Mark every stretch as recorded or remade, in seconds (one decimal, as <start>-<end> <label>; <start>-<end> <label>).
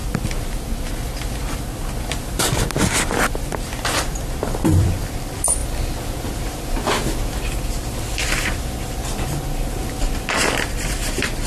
0.0-5.6 remade; 5.6-10.3 recorded; 10.3-11.5 remade